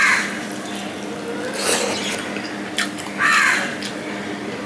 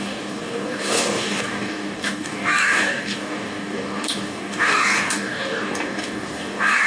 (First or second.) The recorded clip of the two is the first